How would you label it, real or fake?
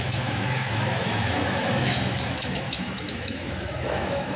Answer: fake